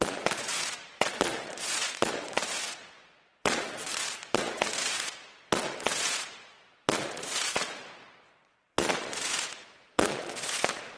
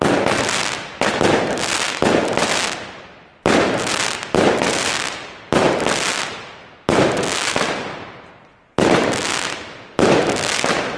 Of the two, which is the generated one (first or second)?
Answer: first